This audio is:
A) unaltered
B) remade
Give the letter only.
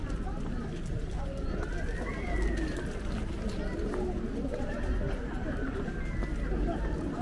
A